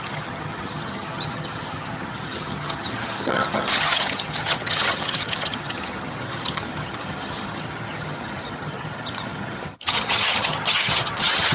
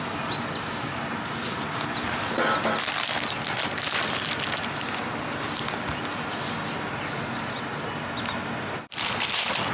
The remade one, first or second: first